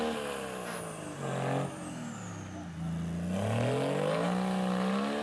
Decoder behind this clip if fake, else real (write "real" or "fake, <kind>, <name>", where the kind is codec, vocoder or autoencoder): real